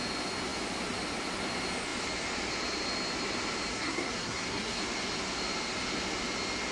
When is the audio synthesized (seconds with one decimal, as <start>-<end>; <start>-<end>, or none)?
3.7-4.8